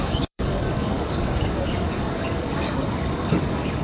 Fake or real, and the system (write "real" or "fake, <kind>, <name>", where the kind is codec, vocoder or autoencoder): fake, codec, DAC